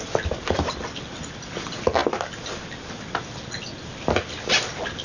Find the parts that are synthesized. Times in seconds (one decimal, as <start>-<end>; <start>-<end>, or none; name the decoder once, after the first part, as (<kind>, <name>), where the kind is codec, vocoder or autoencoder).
none